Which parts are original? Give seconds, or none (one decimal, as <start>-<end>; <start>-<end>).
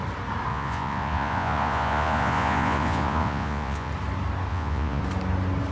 0.0-0.5; 3.9-4.5; 5.0-5.7